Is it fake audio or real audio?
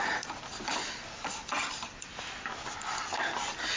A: real